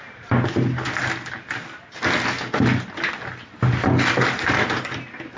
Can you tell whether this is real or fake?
real